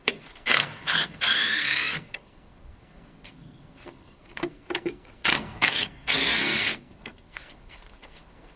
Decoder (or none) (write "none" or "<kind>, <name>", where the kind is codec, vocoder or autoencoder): codec, SNAC